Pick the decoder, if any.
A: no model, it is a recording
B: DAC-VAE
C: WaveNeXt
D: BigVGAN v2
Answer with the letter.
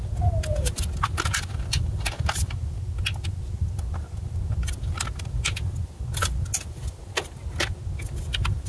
A